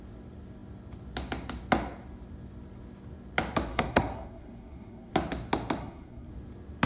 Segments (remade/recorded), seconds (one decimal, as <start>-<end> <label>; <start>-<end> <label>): 0.0-3.7 recorded; 3.7-5.1 remade; 5.1-5.8 recorded; 5.8-6.3 remade; 6.3-6.9 recorded